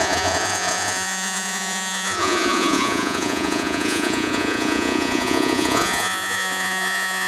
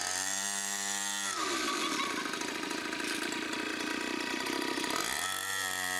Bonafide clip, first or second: second